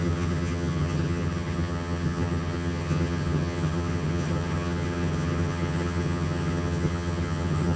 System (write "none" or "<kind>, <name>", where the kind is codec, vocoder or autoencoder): vocoder, HiFi-GAN